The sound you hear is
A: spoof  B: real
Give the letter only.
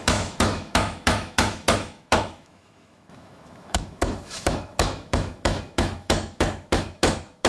A